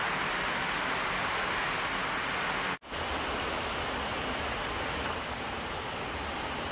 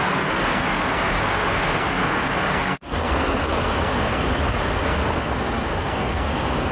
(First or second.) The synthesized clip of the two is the second